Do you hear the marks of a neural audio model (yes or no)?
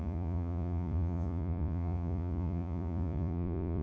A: yes